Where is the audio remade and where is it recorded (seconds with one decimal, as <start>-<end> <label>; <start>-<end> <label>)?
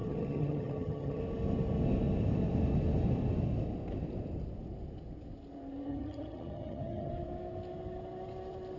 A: 0.0-1.2 remade; 1.2-5.9 recorded; 5.9-7.1 remade; 7.1-8.8 recorded